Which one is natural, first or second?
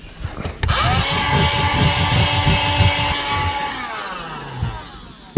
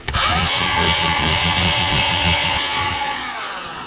first